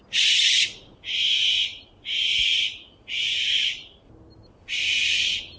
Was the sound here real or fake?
real